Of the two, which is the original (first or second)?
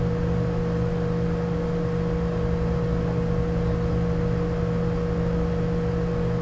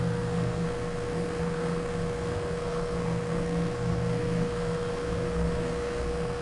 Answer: first